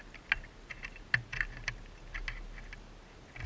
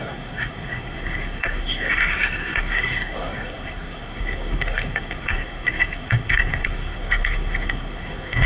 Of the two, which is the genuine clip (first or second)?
first